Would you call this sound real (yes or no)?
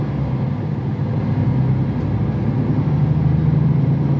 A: yes